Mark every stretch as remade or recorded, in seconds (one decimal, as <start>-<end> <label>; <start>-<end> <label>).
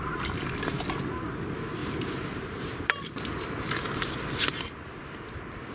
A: 0.0-1.8 recorded; 1.8-5.0 remade; 5.0-5.7 recorded